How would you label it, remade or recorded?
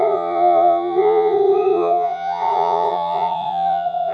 remade